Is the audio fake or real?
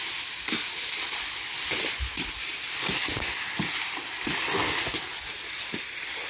real